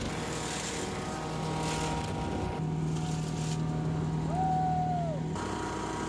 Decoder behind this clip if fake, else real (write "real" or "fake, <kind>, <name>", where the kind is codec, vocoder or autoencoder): real